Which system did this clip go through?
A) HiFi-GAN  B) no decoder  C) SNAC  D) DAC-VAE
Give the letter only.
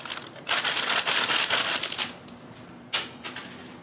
B